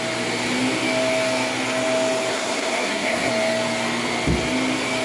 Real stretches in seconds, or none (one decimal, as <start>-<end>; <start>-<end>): 0.0-2.3; 3.3-5.0